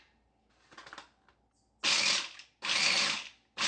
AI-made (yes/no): no